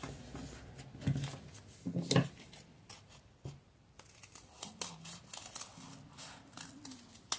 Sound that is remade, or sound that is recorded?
recorded